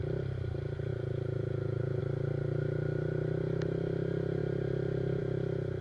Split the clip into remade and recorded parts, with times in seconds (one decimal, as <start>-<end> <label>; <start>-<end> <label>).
0.0-0.9 recorded; 0.9-2.0 remade; 2.0-5.8 recorded